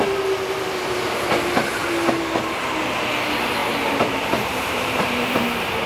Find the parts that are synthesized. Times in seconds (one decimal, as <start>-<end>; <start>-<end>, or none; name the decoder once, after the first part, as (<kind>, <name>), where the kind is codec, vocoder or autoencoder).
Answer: 3.6-5.9 (vocoder, BigVGAN v2)